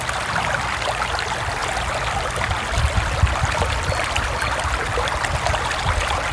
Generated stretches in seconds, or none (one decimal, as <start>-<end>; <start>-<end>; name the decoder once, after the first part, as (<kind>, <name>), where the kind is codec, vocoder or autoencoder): none